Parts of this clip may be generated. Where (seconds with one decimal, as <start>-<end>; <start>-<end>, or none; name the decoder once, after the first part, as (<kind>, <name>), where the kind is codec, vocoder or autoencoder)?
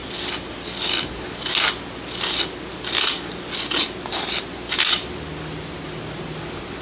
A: none